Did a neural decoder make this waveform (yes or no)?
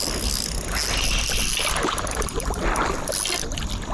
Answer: no